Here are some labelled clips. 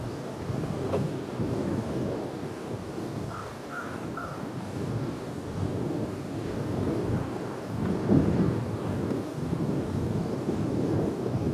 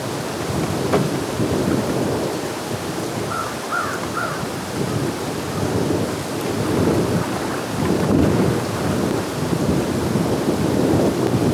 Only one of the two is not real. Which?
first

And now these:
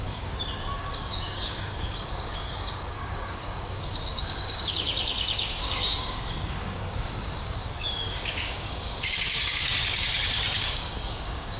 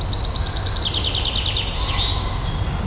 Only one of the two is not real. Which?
first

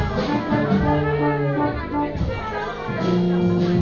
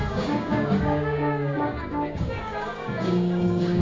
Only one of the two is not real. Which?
second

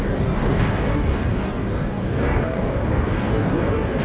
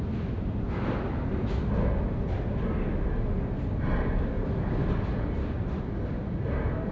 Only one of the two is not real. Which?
first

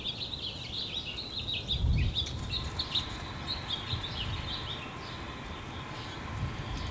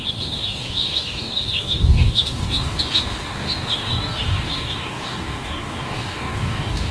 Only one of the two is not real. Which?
second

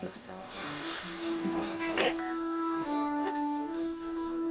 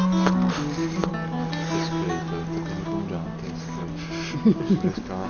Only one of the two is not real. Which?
first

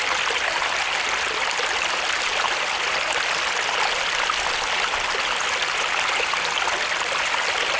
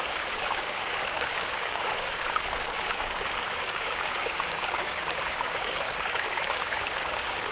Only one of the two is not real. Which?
second